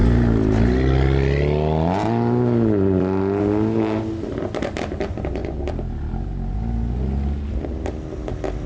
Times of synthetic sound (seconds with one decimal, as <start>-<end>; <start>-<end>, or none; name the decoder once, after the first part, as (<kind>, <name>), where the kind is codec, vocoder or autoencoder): none